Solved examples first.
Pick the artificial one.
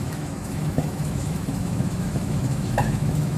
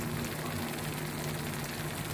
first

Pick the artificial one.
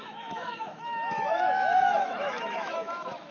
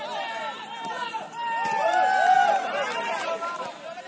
first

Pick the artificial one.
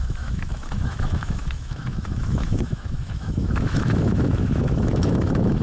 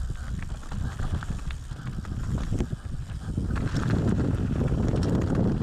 first